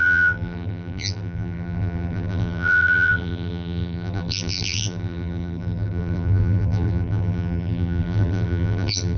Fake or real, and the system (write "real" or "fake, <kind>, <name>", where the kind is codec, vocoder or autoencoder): fake, vocoder, BigVGAN v2